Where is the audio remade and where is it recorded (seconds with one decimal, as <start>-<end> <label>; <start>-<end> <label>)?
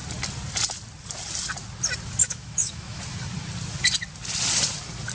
0.0-2.2 recorded; 2.2-3.0 remade; 3.0-5.1 recorded